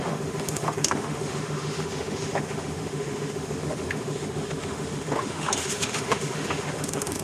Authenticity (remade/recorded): remade